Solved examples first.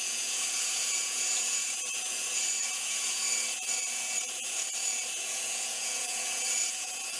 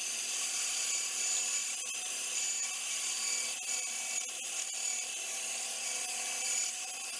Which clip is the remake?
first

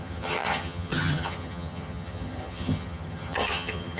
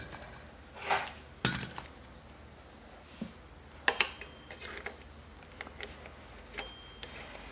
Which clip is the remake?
first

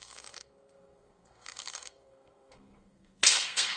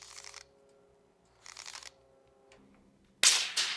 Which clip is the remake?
first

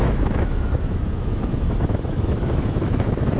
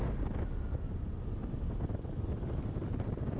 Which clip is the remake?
first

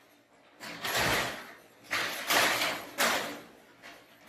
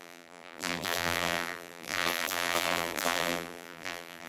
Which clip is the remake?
second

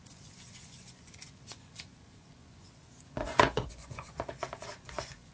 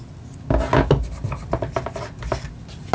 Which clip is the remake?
first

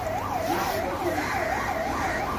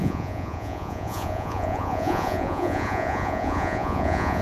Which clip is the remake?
second